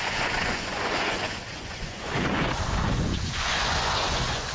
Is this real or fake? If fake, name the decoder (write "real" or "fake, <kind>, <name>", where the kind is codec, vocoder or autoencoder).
fake, vocoder, Vocos